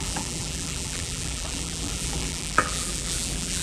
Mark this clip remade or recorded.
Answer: remade